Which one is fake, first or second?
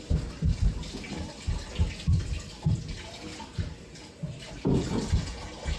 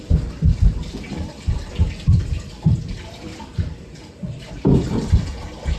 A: second